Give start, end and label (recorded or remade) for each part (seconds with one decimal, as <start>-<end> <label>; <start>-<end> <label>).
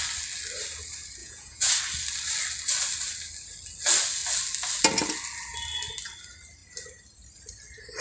0.0-1.2 recorded; 1.2-1.7 remade; 1.7-8.0 recorded